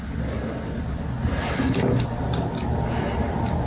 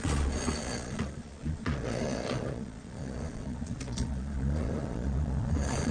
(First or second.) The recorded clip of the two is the first